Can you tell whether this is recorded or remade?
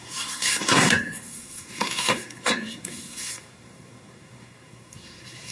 remade